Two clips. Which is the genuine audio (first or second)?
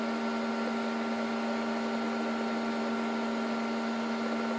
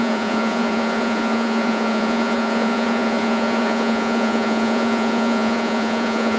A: first